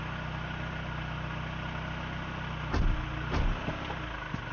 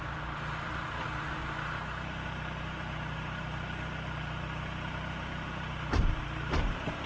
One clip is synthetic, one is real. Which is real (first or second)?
first